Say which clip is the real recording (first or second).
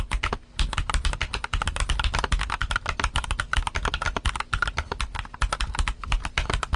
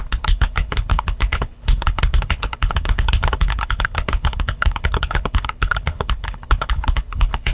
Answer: first